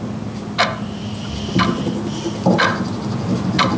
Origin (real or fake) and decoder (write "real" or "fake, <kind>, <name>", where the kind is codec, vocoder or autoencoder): real